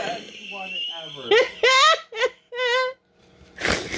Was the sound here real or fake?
real